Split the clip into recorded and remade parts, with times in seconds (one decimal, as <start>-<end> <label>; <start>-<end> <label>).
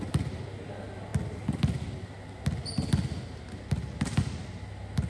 0.0-5.1 recorded